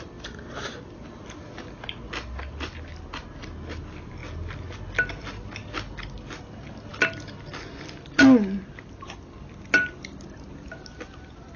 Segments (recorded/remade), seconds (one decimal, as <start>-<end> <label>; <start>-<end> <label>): 0.0-11.6 recorded